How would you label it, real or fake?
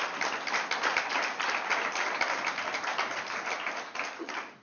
real